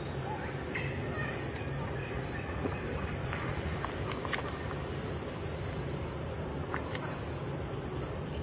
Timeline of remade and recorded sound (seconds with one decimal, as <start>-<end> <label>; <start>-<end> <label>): 0.0-2.0 recorded; 2.0-2.8 remade; 2.8-3.2 recorded; 3.2-3.8 remade; 3.8-8.4 recorded